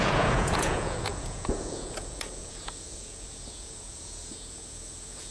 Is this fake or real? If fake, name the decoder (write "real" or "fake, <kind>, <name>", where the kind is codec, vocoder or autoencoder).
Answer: fake, vocoder, Vocos